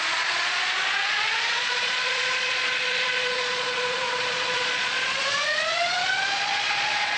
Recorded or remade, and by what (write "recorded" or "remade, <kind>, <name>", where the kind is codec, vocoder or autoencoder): remade, vocoder, Vocos